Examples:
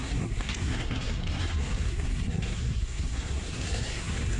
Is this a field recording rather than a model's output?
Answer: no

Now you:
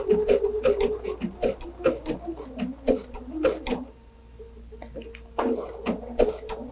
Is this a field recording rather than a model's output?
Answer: yes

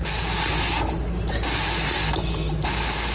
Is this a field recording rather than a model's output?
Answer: yes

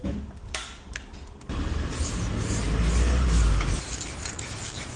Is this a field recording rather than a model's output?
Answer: yes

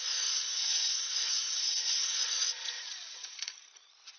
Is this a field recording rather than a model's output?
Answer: no